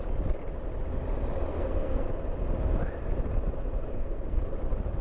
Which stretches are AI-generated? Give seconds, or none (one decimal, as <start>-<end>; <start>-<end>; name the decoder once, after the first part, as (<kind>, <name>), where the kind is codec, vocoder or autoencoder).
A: 1.5-2.1 (codec, SNAC); 3.9-4.4